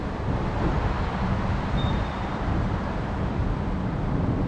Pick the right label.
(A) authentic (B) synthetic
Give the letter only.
B